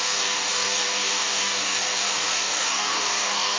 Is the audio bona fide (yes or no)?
no